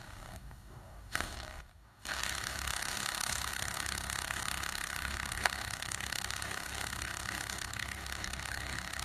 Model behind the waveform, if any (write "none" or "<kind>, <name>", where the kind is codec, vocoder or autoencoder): codec, DAC